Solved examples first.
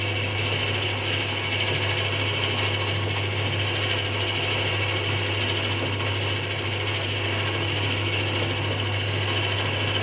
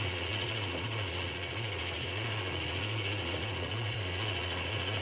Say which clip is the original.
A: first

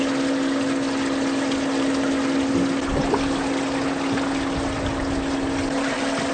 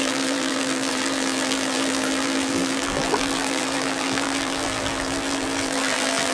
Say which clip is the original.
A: first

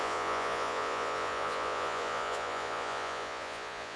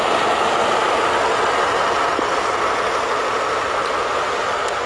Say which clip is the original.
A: second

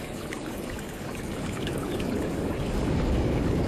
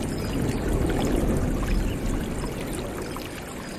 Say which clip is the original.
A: second